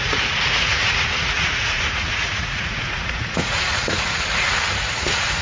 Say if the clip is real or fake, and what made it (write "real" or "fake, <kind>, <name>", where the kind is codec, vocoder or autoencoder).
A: fake, vocoder, Vocos